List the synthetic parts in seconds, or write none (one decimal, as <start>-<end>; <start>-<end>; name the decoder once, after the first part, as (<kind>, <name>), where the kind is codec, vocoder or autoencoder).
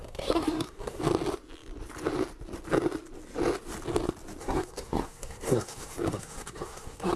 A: 0.0-1.0 (codec, SNAC); 4.4-7.2